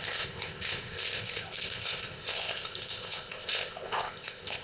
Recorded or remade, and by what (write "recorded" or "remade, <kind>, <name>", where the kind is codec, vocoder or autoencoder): remade, codec, ZipCodec